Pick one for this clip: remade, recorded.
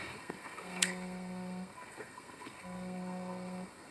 remade